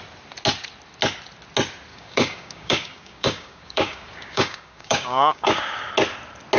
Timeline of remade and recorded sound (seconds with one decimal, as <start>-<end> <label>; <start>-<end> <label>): 0.0-1.9 recorded; 1.9-5.9 remade; 5.9-6.6 recorded